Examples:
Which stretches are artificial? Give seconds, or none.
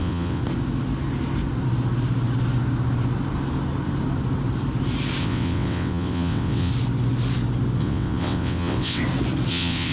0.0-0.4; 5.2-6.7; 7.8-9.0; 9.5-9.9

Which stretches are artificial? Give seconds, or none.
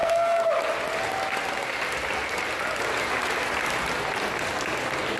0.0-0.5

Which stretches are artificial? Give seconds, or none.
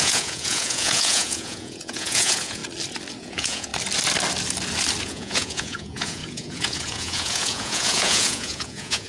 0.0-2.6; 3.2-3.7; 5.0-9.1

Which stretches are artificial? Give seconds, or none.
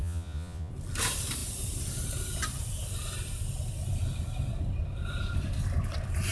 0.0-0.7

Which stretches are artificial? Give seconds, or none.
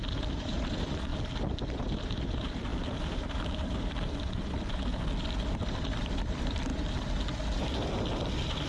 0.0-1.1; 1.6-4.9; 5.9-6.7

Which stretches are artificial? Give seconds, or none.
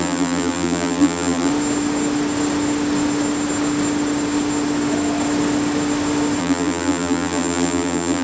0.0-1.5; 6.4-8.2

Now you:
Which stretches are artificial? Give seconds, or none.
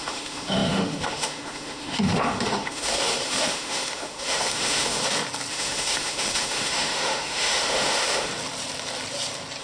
0.0-5.0; 5.5-8.3